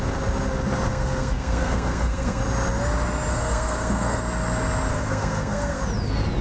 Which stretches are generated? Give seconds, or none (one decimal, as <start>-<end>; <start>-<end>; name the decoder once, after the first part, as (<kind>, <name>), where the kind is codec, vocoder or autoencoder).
0.9-2.4 (codec, SNAC); 3.3-4.2; 4.9-5.8